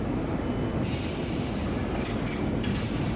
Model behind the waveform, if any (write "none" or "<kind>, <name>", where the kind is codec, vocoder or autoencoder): none